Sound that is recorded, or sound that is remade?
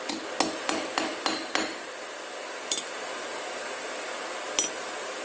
recorded